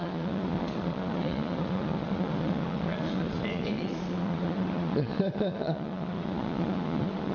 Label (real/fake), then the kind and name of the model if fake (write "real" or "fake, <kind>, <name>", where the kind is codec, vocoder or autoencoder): fake, vocoder, Vocos